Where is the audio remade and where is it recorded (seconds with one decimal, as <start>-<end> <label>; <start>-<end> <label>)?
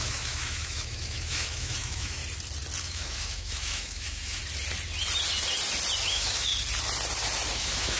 0.0-2.2 remade; 2.2-2.8 recorded; 2.8-4.4 remade; 4.4-6.1 recorded; 6.1-6.5 remade; 6.5-7.6 recorded; 7.6-8.0 remade